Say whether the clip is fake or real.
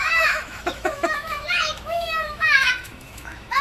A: fake